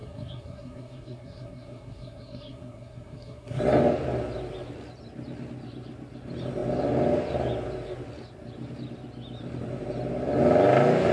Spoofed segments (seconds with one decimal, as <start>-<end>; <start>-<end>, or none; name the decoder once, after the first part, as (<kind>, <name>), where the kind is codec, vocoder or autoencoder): 0.0-3.6 (codec, SNAC)